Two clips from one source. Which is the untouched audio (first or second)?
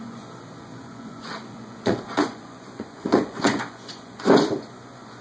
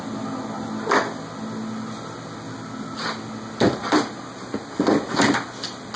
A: second